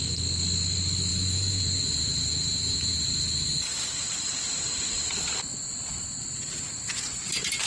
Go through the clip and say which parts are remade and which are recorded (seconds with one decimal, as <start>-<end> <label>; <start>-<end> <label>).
0.0-1.1 recorded; 1.1-5.2 remade; 5.2-7.7 recorded